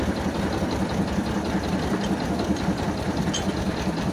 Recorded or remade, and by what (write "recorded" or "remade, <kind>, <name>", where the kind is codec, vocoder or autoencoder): recorded